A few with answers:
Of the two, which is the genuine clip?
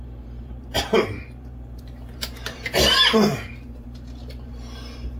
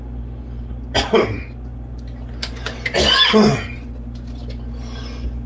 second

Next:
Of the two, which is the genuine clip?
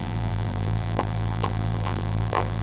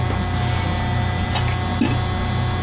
second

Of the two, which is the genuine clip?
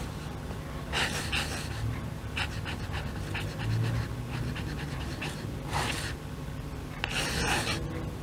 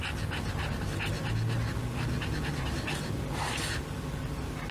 second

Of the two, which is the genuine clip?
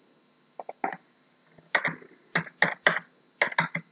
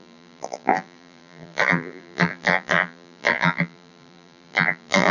first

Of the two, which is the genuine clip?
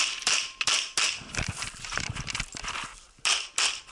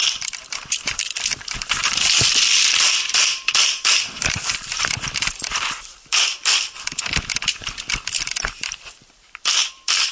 first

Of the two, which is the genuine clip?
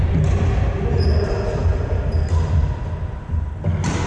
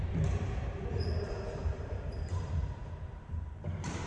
first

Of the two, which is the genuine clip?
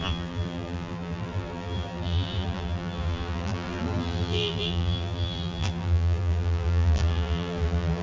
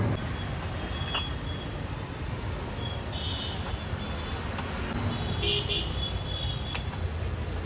second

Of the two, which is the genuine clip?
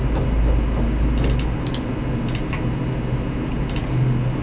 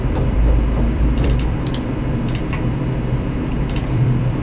first